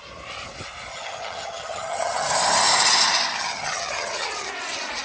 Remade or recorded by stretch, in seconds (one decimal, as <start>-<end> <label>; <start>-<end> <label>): 0.0-0.9 recorded; 0.9-2.3 remade; 2.3-3.4 recorded; 3.4-4.5 remade; 4.5-5.0 recorded